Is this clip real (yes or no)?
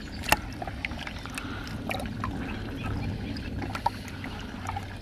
yes